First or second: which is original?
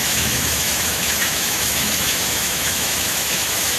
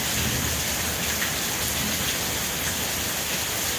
second